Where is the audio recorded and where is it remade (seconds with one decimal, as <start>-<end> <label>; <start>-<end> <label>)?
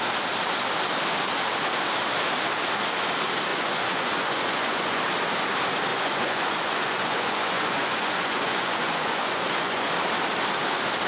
0.0-3.5 recorded; 3.5-5.0 remade; 5.0-5.9 recorded; 5.9-9.9 remade; 9.9-11.1 recorded